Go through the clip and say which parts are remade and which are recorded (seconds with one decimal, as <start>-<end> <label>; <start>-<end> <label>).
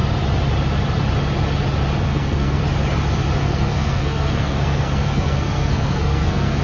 0.0-2.1 recorded; 2.1-2.6 remade; 2.6-3.4 recorded; 3.4-6.6 remade